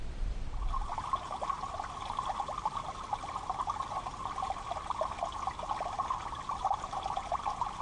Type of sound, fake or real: real